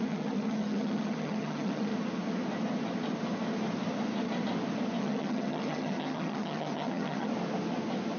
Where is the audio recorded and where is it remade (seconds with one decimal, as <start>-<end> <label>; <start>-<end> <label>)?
0.0-1.9 remade; 1.9-5.0 recorded; 5.0-7.3 remade; 7.3-8.2 recorded